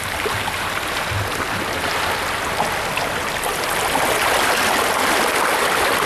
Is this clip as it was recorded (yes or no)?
yes